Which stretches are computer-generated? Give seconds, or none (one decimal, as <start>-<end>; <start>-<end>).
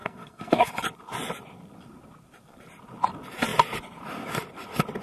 0.0-0.7